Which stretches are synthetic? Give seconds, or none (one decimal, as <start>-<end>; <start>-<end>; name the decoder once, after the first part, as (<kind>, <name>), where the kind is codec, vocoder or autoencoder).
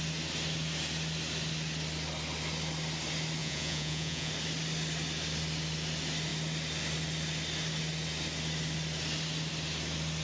3.4-4.3 (vocoder, Vocos)